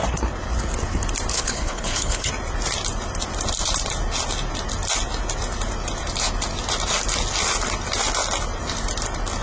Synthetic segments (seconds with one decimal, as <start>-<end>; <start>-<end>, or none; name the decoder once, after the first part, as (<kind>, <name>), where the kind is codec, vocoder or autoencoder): 1.3-2.3 (codec, HILCodec)